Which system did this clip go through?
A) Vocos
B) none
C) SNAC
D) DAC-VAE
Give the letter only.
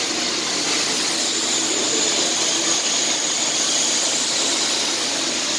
B